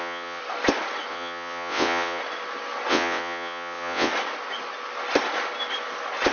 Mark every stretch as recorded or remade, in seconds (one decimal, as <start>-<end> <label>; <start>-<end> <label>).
0.0-0.4 remade; 0.4-1.1 recorded; 1.1-2.2 remade; 2.2-2.9 recorded; 2.9-4.1 remade; 4.1-6.3 recorded